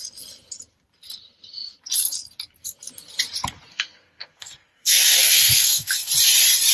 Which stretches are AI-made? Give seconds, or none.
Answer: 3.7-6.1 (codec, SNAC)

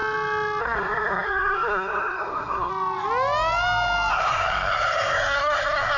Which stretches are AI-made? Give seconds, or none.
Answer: 0.6-2.7 (codec, SNAC); 4.1-6.0

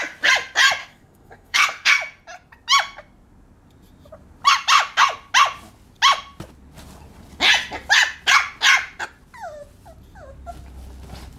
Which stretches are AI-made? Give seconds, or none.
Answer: 0.8-1.9 (codec, SNAC)

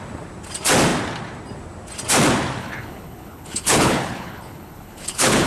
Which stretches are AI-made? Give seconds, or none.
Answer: 2.6-5.5 (codec, HILCodec)